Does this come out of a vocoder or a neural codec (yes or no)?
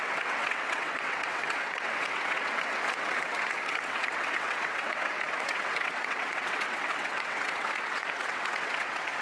yes